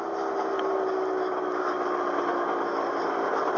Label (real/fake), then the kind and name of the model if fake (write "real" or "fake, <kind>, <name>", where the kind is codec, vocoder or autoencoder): real